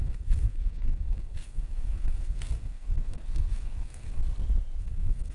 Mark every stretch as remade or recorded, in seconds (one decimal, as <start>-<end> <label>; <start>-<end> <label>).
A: 0.0-4.2 remade; 4.2-4.8 recorded; 4.8-5.3 remade